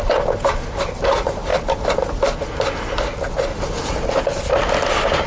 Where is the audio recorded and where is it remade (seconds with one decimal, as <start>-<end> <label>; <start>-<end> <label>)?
0.0-5.3 recorded